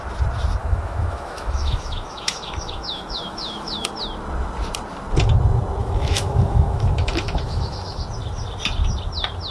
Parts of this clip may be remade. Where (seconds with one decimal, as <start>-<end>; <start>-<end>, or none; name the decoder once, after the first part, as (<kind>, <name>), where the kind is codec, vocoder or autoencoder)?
0.6-3.9 (autoencoder, DAC-VAE); 5.8-8.0